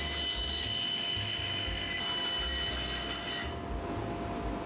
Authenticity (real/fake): real